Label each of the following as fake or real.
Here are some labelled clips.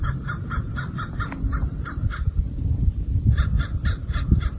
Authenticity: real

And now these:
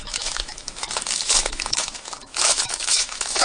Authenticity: fake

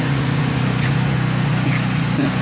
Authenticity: fake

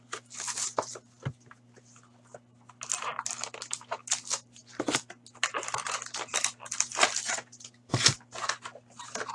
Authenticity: real